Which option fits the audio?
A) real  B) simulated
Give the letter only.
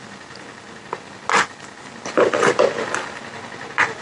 A